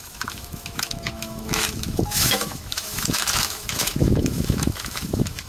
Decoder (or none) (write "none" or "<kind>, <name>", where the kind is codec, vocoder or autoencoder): autoencoder, DAC-VAE